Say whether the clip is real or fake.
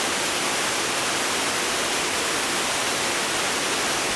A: real